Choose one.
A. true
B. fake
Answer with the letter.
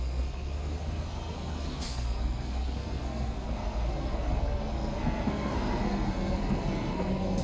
B